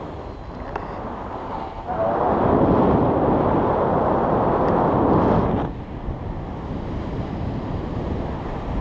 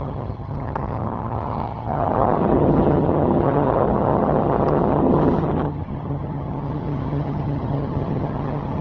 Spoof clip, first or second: second